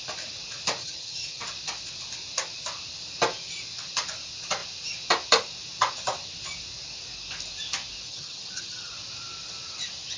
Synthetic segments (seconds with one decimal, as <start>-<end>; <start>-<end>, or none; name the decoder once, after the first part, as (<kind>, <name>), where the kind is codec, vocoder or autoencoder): 0.8-1.4 (vocoder, HiFi-GAN); 8.1-8.9